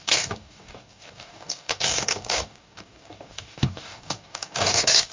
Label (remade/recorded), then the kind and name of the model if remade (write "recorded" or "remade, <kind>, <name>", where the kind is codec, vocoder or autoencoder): remade, codec, DAC